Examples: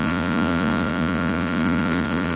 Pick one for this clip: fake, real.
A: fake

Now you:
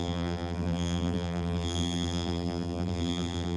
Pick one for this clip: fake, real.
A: fake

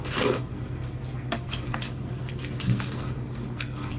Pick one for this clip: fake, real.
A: fake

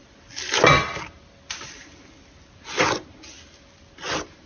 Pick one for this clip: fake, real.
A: real